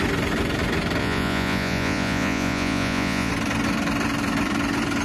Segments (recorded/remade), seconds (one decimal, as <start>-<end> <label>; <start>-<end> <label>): 0.0-1.0 recorded; 1.0-3.3 remade; 3.3-5.0 recorded